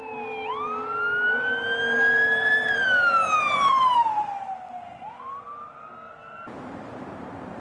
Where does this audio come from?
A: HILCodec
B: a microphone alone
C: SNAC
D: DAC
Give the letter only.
B